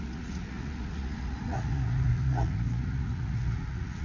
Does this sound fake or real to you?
fake